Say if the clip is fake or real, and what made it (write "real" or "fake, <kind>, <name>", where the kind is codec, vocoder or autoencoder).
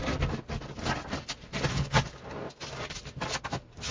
real